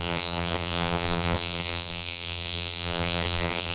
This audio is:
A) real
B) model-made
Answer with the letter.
B